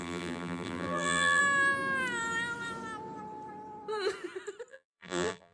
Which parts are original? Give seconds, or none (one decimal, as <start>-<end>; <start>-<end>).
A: 1.4-4.7